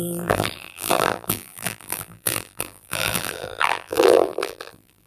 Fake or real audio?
fake